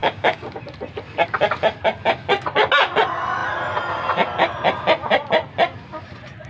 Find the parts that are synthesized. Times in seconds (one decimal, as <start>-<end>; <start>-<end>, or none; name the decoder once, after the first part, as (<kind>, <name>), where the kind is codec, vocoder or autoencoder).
0.0-0.6 (codec, DAC)